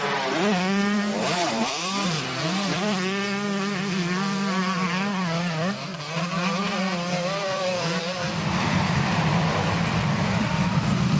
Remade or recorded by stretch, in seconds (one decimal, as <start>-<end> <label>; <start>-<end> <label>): 0.0-5.9 remade; 5.9-6.6 recorded; 6.6-11.2 remade